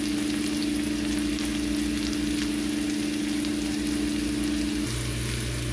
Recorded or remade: recorded